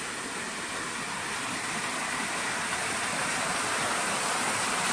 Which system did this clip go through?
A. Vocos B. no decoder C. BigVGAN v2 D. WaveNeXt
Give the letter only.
B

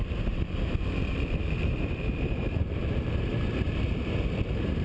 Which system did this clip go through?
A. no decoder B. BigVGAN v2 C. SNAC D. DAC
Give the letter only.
B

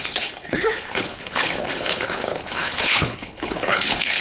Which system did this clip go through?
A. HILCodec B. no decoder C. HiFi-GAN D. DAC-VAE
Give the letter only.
A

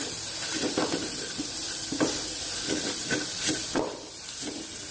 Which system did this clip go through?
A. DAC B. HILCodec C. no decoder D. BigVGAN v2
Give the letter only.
D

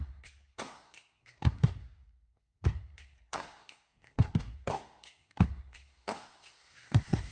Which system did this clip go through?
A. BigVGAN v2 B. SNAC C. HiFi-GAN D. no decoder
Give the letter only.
B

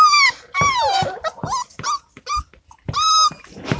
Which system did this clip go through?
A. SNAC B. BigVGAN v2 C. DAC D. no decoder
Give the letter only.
D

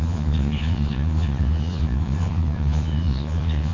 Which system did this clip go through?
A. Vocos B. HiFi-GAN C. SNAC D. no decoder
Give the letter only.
A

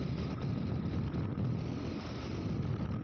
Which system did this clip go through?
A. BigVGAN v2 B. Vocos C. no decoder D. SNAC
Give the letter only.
C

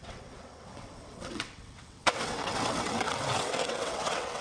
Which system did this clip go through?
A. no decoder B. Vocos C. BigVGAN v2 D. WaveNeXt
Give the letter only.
D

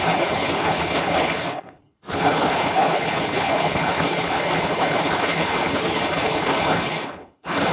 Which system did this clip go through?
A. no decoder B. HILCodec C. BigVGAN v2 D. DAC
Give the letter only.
B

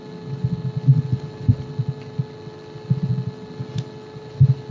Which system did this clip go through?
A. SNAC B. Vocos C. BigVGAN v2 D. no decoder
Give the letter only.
D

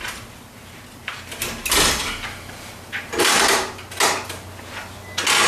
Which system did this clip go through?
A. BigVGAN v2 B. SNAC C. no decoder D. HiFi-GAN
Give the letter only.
C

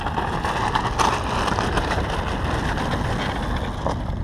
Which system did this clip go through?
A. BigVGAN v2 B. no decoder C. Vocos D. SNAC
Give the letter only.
B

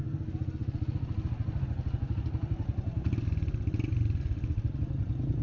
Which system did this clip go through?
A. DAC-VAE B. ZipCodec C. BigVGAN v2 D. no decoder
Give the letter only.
D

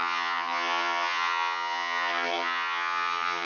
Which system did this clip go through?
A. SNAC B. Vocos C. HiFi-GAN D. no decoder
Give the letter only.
C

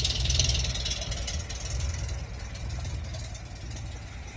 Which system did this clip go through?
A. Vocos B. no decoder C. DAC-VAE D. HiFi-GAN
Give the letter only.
B